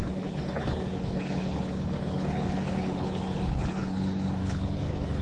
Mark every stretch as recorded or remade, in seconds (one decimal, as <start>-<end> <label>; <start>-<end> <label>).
0.0-5.2 remade